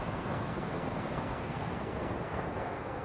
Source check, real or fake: fake